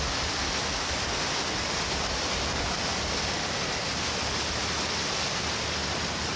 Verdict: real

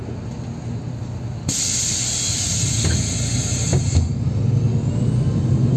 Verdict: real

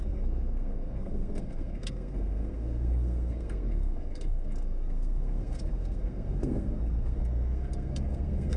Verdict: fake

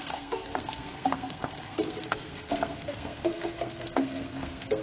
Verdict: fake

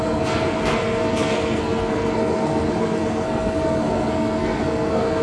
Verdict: fake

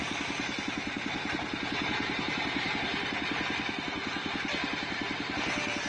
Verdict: real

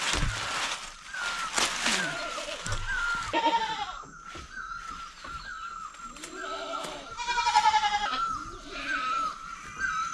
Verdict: real